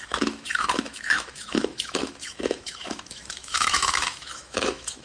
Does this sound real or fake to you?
fake